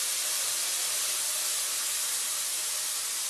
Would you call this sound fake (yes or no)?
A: no